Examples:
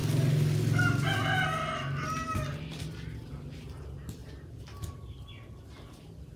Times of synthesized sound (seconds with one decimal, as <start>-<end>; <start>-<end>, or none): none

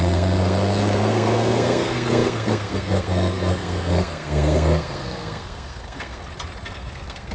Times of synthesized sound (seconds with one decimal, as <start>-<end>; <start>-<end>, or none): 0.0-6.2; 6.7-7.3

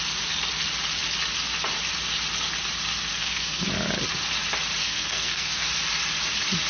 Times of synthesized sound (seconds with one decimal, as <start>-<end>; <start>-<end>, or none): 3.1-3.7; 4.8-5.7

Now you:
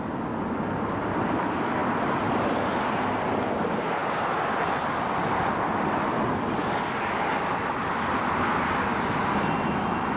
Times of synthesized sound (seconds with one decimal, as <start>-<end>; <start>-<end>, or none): none

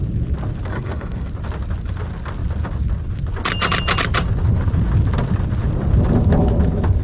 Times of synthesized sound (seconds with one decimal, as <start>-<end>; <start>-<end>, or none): 0.7-1.3

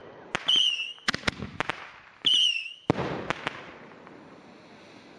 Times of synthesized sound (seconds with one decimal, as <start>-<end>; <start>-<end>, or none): none